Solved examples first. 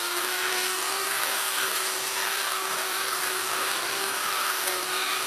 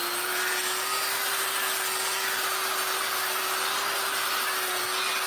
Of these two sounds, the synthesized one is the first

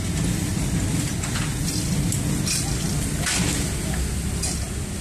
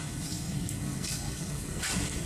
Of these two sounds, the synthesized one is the second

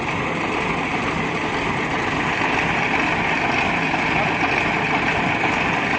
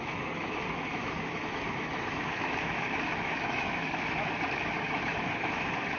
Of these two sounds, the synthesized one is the second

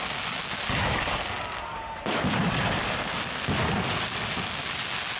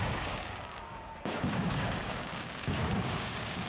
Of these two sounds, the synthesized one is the second